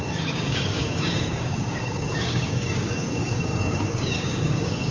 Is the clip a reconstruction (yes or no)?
yes